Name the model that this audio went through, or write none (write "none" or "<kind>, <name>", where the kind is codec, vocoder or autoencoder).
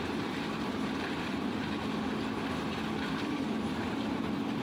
none